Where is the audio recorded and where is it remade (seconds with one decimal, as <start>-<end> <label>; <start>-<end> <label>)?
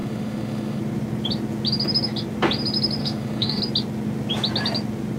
0.0-0.8 remade; 0.8-3.0 recorded; 3.0-3.6 remade; 3.6-5.2 recorded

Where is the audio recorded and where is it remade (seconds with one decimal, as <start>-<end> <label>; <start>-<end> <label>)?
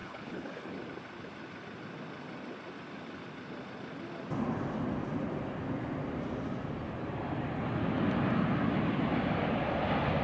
0.0-0.7 remade; 0.7-10.2 recorded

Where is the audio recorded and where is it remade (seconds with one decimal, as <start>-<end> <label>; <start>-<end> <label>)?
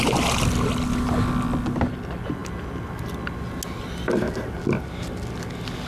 0.0-5.9 recorded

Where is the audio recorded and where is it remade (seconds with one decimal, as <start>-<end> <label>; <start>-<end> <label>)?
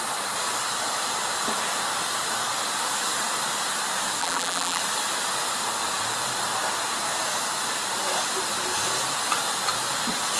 0.0-4.2 recorded; 4.2-4.8 remade; 4.8-10.4 recorded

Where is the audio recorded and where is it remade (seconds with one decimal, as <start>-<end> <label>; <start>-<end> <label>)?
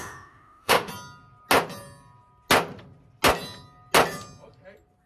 0.0-0.9 remade; 0.9-5.1 recorded